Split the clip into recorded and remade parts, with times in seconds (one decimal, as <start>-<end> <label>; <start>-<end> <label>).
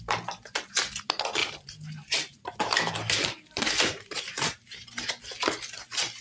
0.0-1.4 recorded; 1.4-5.1 remade; 5.1-6.2 recorded